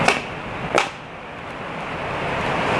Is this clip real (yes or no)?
yes